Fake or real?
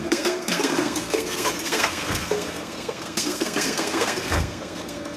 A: fake